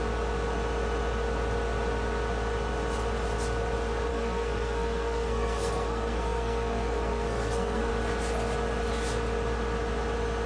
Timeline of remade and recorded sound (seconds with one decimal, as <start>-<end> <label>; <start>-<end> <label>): 0.0-4.1 recorded; 4.1-7.9 remade; 7.9-10.5 recorded